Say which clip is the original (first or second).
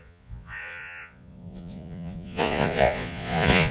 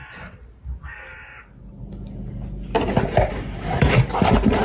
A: second